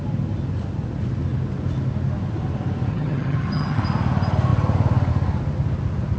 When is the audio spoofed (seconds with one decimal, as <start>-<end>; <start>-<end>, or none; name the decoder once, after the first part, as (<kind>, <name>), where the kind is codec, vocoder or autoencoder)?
2.9-3.8 (vocoder, HiFi-GAN)